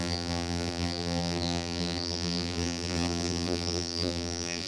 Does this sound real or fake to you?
fake